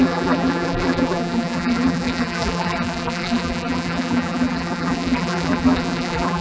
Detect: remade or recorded remade